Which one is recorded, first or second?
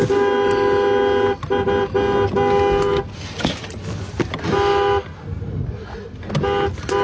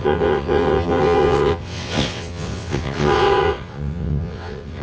first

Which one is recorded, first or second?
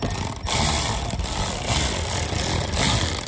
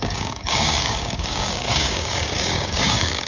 first